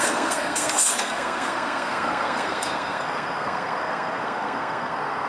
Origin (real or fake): fake